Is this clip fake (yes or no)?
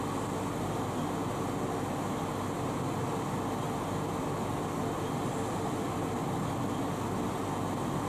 no